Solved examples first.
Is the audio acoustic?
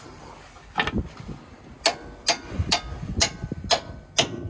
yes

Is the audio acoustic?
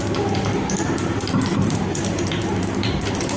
no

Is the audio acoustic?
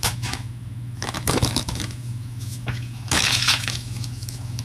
no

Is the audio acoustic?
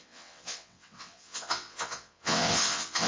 no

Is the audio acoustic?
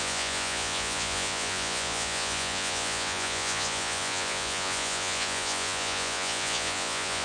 no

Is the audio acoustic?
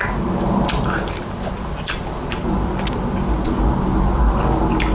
yes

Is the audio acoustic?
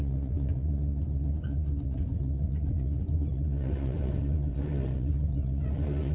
no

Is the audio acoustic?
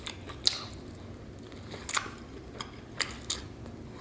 yes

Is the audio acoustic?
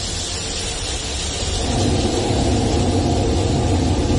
yes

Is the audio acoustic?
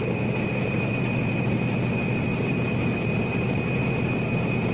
yes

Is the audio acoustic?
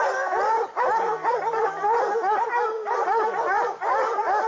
yes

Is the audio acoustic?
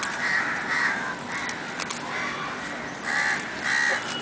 yes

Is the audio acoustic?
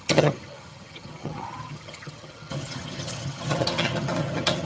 no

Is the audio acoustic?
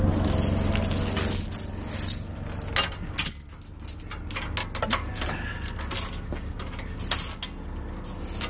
yes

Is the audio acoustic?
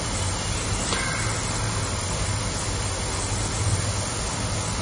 yes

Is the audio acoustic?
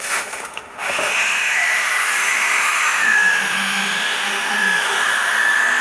no